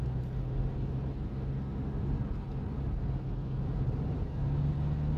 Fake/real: real